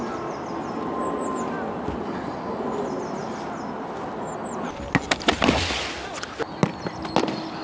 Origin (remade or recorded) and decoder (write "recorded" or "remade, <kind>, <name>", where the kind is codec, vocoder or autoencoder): recorded